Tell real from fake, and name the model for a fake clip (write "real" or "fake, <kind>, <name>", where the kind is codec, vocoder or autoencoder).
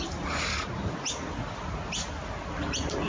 real